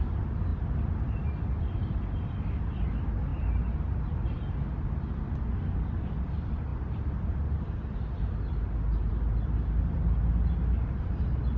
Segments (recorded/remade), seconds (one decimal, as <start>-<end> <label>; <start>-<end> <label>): 0.0-3.3 recorded; 3.3-4.5 remade; 4.5-11.6 recorded